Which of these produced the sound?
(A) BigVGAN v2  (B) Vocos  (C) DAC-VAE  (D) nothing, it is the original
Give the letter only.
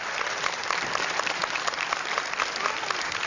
A